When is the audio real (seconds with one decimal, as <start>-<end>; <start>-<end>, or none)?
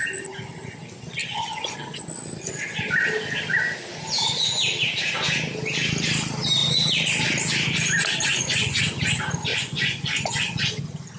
0.0-1.2; 2.0-8.3; 8.8-9.5; 10.6-11.2